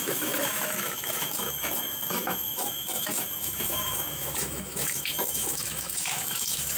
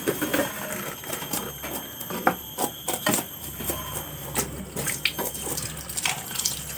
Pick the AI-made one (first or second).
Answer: first